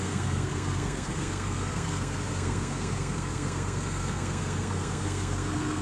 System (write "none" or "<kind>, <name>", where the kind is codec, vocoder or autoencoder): codec, SNAC